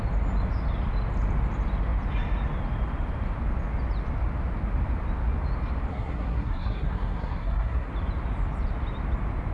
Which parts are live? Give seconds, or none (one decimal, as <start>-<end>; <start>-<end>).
0.0-5.9; 7.9-9.5